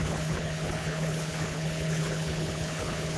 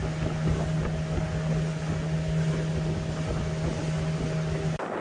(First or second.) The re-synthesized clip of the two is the first